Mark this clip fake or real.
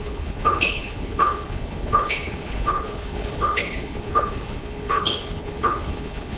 fake